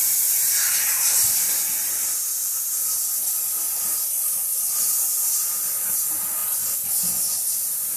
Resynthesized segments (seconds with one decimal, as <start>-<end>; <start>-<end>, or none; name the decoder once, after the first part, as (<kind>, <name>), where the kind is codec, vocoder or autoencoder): none